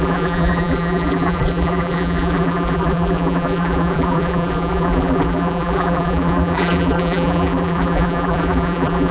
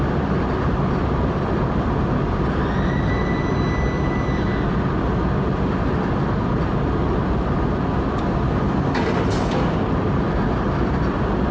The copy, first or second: first